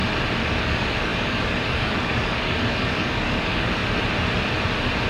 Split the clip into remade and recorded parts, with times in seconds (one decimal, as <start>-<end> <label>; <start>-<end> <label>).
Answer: 0.0-0.6 recorded; 0.6-3.8 remade; 3.8-5.1 recorded

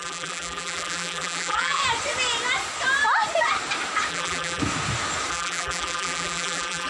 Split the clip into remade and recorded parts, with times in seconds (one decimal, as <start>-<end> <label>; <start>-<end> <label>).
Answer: 0.0-1.8 remade; 1.8-4.1 recorded; 4.1-4.6 remade; 4.6-5.3 recorded; 5.3-6.9 remade